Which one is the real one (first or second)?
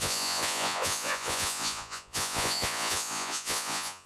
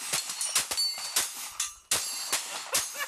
second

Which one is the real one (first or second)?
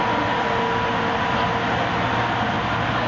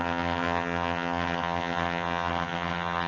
first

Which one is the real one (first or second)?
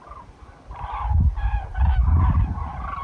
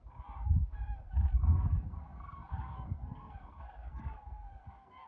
first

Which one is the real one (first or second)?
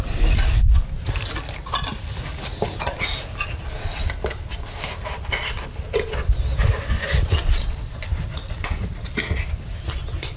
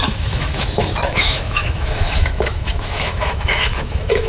first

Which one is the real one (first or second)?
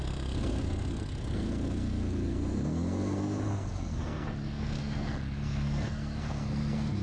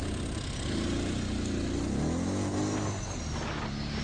second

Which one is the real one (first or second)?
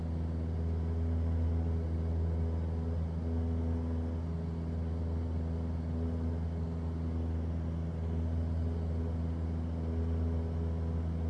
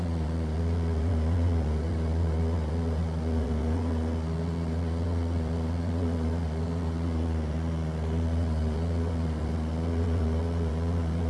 first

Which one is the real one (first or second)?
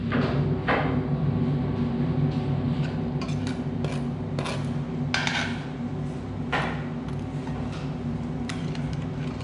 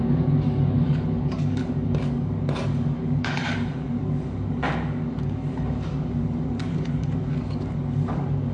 first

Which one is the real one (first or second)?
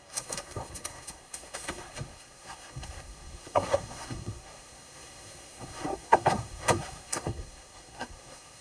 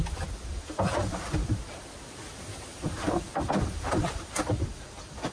second